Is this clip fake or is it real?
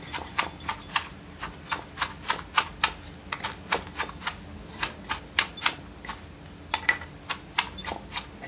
real